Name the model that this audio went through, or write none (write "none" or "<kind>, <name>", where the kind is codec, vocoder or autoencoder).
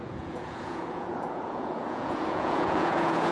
vocoder, Vocos